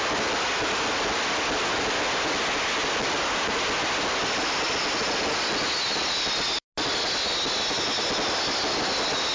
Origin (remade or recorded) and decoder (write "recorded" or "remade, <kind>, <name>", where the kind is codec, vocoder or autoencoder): recorded